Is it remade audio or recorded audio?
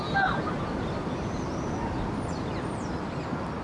recorded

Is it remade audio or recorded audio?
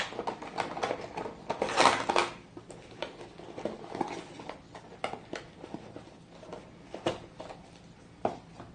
recorded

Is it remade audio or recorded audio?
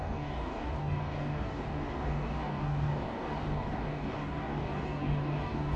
remade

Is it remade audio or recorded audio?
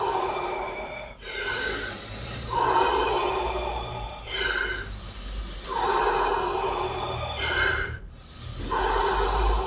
remade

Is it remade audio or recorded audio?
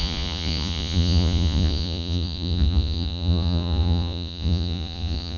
remade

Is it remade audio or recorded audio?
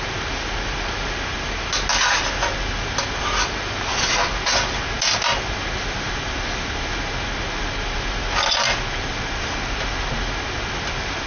recorded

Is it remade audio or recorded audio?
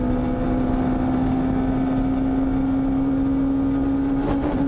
recorded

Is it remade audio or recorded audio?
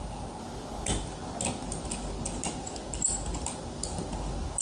recorded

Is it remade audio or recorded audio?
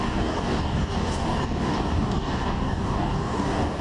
remade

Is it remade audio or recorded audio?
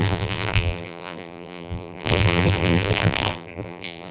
remade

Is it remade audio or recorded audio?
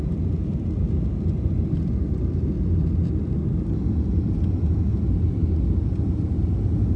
recorded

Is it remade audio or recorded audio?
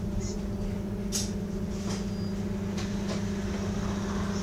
recorded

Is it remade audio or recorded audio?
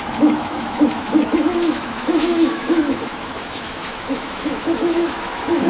remade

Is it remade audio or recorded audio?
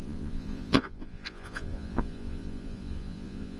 remade